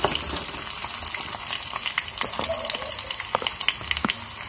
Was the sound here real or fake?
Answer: real